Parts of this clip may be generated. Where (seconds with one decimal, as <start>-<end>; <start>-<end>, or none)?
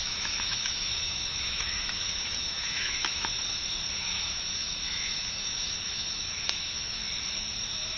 0.0-3.3; 3.9-7.0; 7.6-8.0